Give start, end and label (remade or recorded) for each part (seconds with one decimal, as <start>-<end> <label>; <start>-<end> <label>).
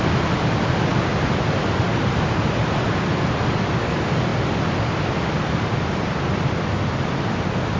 0.0-7.8 recorded